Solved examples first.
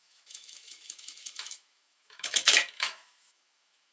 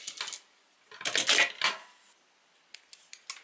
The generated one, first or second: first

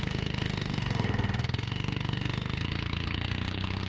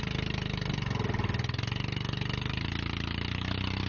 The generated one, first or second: first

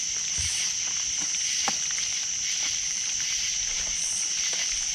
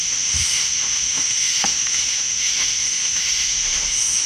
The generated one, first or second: second